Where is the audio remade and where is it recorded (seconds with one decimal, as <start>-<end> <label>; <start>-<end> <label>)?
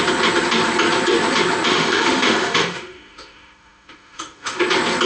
0.0-1.7 recorded; 1.7-4.6 remade; 4.6-5.1 recorded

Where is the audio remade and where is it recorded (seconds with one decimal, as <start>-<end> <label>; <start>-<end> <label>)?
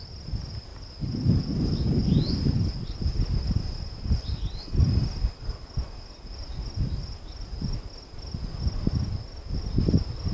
0.0-10.3 recorded